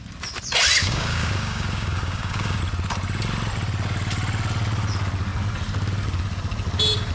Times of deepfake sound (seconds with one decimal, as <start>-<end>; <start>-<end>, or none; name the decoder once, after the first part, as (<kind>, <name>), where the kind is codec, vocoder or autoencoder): 0.8-2.6 (codec, DAC)